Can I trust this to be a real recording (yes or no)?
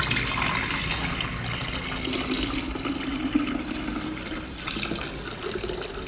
yes